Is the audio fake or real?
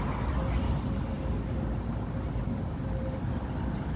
real